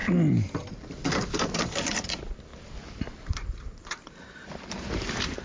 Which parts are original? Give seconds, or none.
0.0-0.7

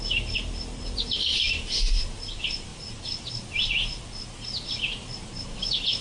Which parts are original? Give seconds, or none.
0.0-6.0

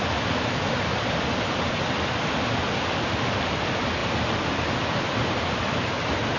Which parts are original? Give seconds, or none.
0.0-6.4

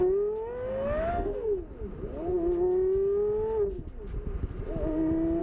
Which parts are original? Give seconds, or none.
0.0-1.1; 1.6-5.4